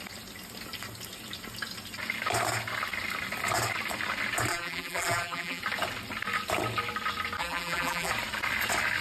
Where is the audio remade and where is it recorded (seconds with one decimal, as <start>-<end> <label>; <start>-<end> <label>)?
0.0-4.5 recorded; 4.5-5.6 remade; 5.6-7.4 recorded; 7.4-8.1 remade; 8.1-9.0 recorded